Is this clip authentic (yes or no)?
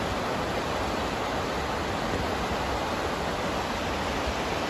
yes